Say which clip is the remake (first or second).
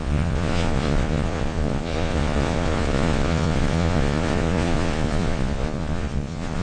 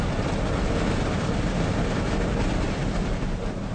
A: first